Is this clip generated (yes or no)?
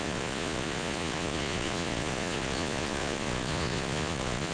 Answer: yes